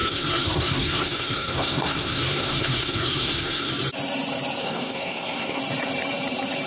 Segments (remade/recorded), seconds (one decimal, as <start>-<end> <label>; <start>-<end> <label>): 0.0-3.7 remade; 3.7-4.6 recorded; 4.6-5.6 remade; 5.6-6.7 recorded